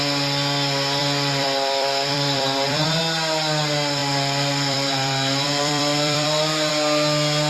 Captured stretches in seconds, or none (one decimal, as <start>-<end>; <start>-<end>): 0.0-1.0; 3.0-4.0; 6.7-7.5